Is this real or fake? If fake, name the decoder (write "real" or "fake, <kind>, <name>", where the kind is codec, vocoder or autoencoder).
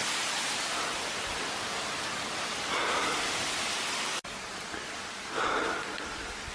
fake, vocoder, BigVGAN v2